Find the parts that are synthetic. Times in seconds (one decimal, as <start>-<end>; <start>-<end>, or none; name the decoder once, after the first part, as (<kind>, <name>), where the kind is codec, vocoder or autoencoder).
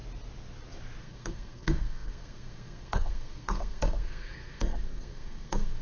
1.0-5.8 (codec, SNAC)